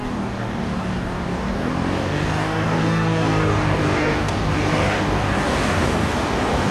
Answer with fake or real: fake